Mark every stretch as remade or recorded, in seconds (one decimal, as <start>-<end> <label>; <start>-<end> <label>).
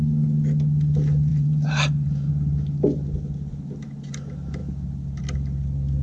0.0-1.3 recorded; 1.3-2.3 remade; 2.3-6.0 recorded